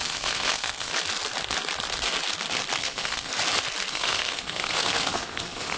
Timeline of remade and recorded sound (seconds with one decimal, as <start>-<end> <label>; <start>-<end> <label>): 0.0-0.9 remade; 0.9-2.8 recorded; 2.8-3.3 remade; 3.3-3.9 recorded; 3.9-5.8 remade